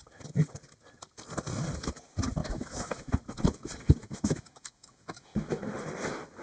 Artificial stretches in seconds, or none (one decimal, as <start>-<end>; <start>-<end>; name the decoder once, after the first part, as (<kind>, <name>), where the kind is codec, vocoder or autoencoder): 2.4-3.1 (autoencoder, DAC-VAE); 4.0-5.7